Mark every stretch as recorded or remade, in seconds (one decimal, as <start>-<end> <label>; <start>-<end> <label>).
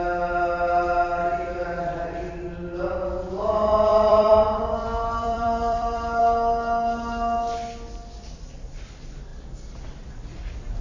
0.0-3.9 recorded; 3.9-6.2 remade; 6.2-10.8 recorded